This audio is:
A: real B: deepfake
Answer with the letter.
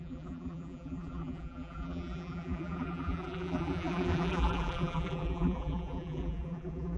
B